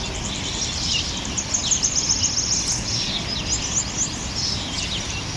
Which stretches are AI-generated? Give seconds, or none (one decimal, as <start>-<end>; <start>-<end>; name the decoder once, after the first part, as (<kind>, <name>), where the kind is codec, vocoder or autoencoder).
none